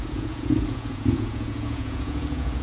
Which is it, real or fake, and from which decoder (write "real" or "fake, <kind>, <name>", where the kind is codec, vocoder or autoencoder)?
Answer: fake, vocoder, Vocos